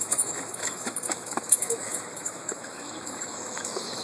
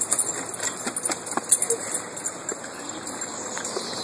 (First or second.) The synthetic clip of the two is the first